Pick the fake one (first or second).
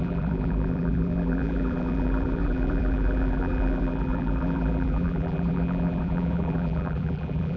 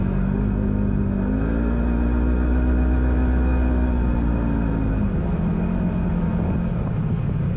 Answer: first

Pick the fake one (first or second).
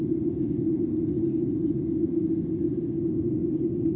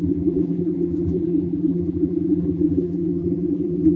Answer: second